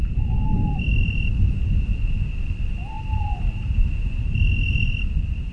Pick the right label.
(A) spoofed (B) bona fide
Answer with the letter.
B